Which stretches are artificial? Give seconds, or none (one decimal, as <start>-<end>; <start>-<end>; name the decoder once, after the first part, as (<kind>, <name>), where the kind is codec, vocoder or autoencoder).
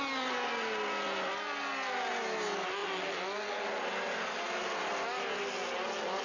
none